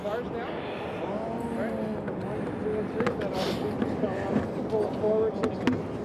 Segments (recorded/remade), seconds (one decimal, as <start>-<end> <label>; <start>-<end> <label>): 0.0-6.0 recorded